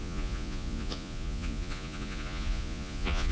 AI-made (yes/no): yes